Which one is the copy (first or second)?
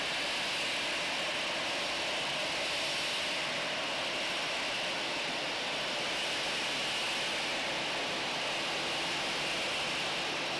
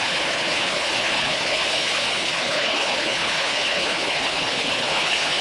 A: second